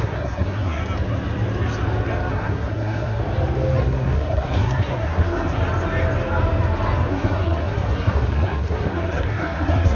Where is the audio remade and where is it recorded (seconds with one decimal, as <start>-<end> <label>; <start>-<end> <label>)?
0.0-0.8 remade; 0.8-2.3 recorded; 2.3-3.2 remade; 3.2-3.8 recorded; 3.8-5.6 remade; 5.6-7.1 recorded; 7.1-9.9 remade